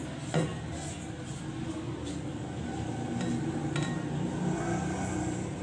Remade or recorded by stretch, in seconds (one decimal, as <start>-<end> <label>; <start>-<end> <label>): 0.0-5.6 recorded